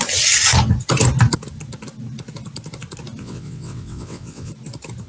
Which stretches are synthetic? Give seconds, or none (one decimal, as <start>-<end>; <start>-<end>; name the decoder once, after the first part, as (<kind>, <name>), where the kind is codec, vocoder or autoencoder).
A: 3.2-4.5 (vocoder, WaveNeXt)

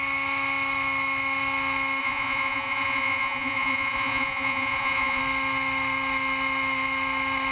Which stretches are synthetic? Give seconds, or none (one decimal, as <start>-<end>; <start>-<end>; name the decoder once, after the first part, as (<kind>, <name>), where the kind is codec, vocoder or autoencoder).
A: 2.0-5.2 (vocoder, Vocos)